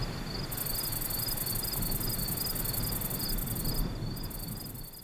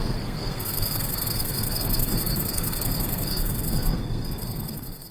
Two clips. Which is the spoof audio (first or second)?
second